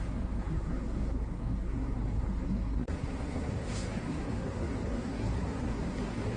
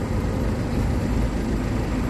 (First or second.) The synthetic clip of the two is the first